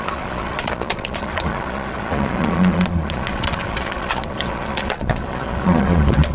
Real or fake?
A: fake